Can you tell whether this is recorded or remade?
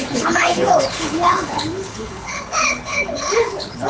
remade